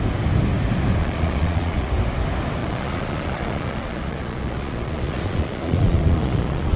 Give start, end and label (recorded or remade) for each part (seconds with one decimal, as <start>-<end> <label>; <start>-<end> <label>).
0.0-1.0 recorded; 1.0-1.9 remade; 1.9-2.6 recorded; 2.6-6.8 remade